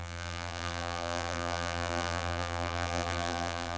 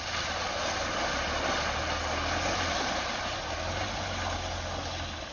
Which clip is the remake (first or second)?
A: first